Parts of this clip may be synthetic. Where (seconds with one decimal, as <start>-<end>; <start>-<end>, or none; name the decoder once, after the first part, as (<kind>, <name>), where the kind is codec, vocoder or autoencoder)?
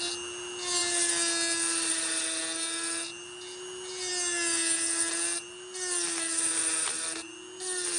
none